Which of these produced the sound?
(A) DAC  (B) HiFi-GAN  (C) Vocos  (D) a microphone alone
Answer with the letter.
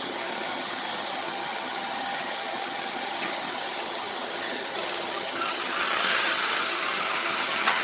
B